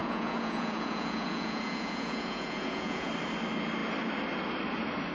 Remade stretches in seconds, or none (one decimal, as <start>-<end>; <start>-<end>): 0.0-3.1